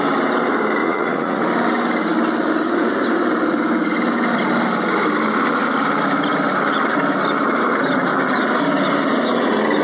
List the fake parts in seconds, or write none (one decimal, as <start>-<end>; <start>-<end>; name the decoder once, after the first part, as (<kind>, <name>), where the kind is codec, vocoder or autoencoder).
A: 0.8-1.4 (vocoder, Vocos)